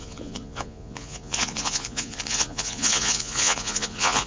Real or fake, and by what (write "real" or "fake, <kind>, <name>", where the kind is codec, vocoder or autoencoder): fake, vocoder, Vocos